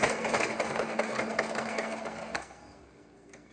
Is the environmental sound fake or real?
fake